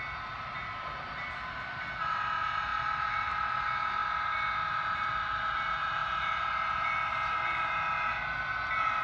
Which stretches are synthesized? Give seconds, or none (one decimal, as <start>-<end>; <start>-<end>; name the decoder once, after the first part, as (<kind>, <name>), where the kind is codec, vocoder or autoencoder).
none